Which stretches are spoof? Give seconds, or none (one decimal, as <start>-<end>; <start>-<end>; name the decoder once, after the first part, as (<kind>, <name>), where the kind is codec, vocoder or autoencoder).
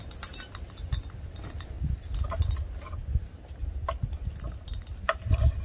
none